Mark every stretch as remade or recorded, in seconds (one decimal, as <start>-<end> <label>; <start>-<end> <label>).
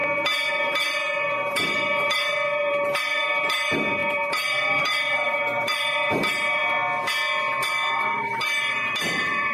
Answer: 0.0-0.5 recorded; 0.5-6.6 remade; 6.6-7.9 recorded; 7.9-9.5 remade